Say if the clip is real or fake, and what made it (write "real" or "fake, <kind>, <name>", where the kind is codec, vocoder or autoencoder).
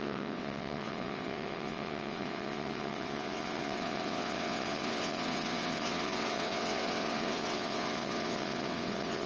fake, vocoder, WaveNeXt